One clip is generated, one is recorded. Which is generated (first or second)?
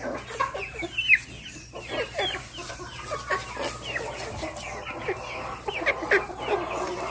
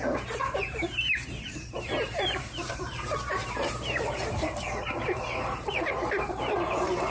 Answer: second